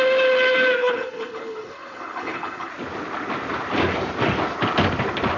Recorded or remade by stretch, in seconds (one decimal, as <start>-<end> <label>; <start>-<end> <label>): 0.0-0.8 recorded; 0.8-2.7 remade; 2.7-5.4 recorded